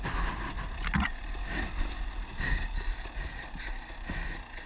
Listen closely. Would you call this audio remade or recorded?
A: recorded